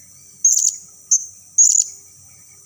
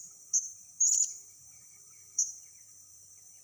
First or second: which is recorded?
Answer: first